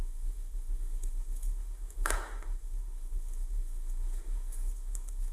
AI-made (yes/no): yes